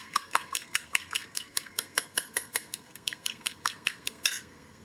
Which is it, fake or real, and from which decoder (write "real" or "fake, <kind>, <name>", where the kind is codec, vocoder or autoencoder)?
fake, codec, SNAC